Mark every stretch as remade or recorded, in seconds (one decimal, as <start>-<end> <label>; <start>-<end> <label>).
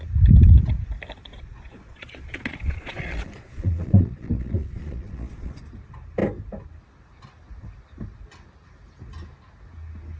0.0-1.3 recorded; 1.3-5.6 remade; 5.6-10.2 recorded